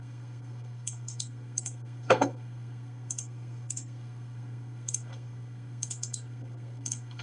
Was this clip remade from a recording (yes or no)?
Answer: yes